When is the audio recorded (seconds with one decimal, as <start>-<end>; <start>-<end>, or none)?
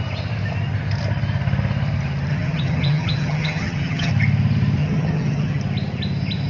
0.0-2.3; 4.1-4.8; 5.6-6.5